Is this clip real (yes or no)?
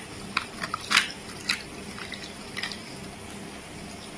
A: yes